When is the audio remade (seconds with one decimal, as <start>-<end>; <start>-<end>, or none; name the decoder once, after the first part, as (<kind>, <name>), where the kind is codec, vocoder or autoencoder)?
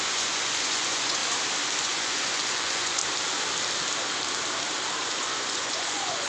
0.0-1.2 (vocoder, Vocos); 1.8-3.0; 5.0-6.3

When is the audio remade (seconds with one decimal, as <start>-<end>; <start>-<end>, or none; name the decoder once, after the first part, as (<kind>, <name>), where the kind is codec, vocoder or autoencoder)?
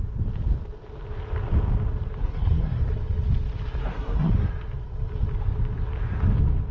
2.2-2.8 (codec, SNAC); 3.8-4.3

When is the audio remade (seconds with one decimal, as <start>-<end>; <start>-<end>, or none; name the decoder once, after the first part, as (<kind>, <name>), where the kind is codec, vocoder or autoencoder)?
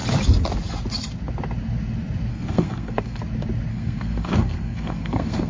2.3-3.2 (codec, SNAC); 3.7-5.5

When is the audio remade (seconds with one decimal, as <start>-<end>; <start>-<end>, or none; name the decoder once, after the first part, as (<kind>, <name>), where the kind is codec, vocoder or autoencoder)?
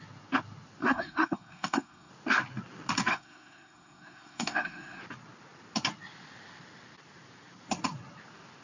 0.8-2.1 (codec, SNAC); 3.1-5.0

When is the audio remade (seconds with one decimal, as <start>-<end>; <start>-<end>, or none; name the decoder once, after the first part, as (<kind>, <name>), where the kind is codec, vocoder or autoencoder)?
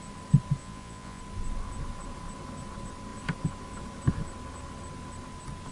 0.6-1.2 (vocoder, Vocos)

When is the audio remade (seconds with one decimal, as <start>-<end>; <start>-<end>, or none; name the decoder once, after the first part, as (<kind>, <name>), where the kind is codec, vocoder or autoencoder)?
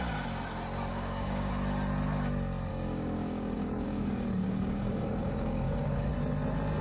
0.9-1.5 (codec, DAC); 2.7-6.1